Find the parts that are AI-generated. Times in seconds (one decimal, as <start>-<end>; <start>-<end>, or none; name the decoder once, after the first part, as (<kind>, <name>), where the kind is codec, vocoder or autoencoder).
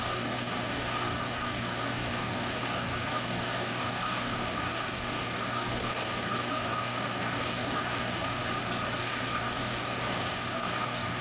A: 0.0-8.4 (codec, DAC); 9.0-11.2